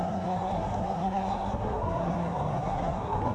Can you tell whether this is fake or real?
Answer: fake